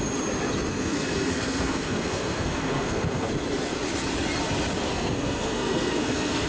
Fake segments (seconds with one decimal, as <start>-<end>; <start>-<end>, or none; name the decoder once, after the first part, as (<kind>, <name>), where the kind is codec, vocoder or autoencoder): 0.7-3.3 (codec, SNAC); 4.9-6.5